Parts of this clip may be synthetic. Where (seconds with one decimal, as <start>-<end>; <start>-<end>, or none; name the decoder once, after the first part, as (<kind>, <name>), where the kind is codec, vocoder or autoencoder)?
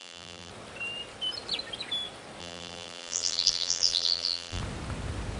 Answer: 0.0-0.5 (vocoder, BigVGAN v2); 2.4-4.6